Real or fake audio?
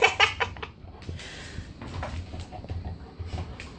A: real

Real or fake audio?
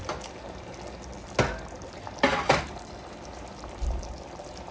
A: real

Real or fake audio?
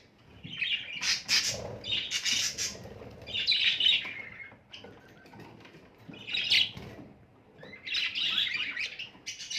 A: real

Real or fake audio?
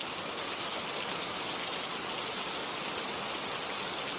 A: real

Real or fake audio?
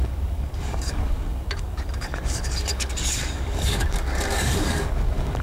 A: fake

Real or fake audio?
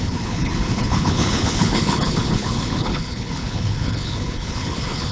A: fake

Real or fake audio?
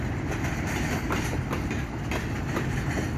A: real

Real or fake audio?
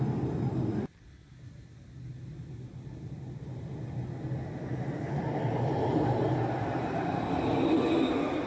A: real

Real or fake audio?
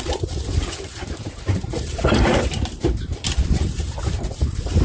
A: fake